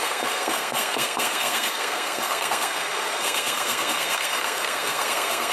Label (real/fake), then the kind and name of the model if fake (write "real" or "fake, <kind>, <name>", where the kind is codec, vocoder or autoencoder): fake, codec, SNAC